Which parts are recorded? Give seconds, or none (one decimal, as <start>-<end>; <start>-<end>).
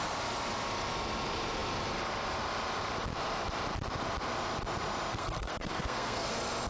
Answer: 0.0-5.1; 6.3-6.7